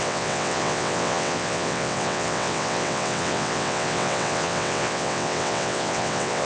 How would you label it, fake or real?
fake